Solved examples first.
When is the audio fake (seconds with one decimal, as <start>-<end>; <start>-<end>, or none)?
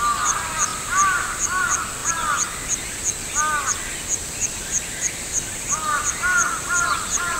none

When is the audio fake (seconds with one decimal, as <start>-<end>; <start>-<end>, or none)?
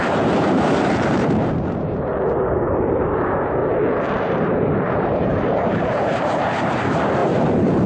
0.0-2.1; 2.7-3.6; 4.2-7.9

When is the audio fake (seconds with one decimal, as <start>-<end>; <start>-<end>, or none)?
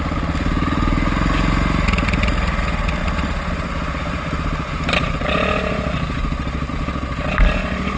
none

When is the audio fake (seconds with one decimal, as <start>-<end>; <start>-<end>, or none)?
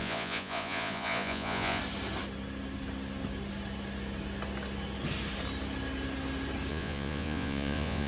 0.0-1.8; 6.7-8.1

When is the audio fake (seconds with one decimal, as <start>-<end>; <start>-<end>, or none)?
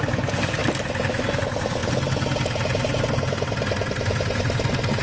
none